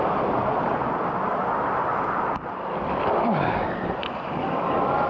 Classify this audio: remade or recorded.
recorded